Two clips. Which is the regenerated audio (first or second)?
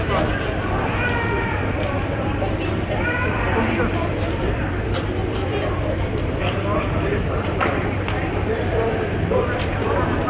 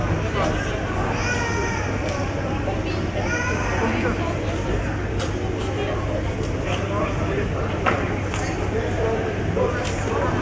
first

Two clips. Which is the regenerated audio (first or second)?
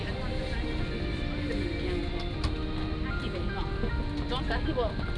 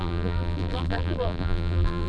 second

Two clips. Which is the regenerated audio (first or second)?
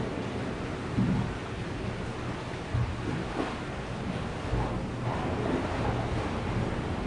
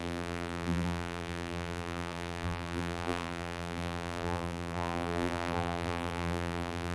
second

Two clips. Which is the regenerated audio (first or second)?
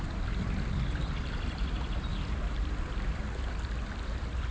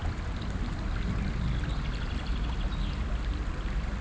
first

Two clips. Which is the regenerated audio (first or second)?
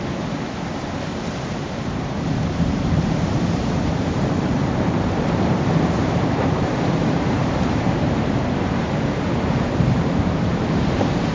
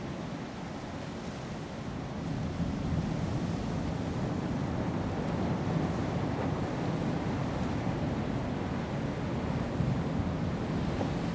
first